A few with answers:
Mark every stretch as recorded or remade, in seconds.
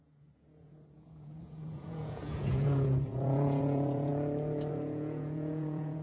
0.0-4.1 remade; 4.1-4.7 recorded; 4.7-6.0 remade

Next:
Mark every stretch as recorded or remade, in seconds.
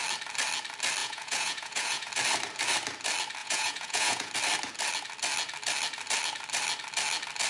0.0-1.0 recorded; 1.0-2.1 remade; 2.1-3.4 recorded; 3.4-4.3 remade; 4.3-7.5 recorded